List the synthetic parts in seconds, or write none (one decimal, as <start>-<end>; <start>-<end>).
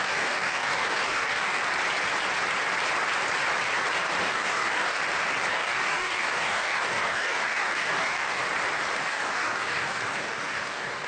0.0-1.6; 4.2-5.0; 5.5-8.4; 9.0-11.1